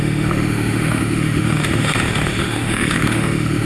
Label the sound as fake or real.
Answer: fake